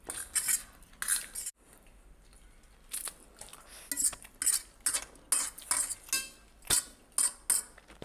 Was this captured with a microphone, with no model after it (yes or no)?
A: yes